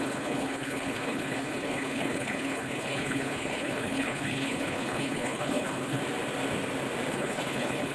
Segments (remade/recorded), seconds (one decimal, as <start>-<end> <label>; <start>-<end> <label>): 0.0-6.0 remade; 6.0-7.1 recorded; 7.1-7.9 remade